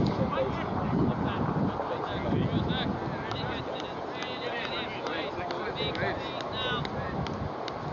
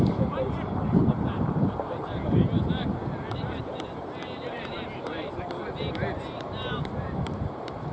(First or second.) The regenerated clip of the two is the second